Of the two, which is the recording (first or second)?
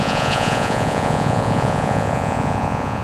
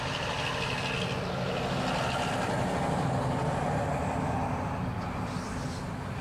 second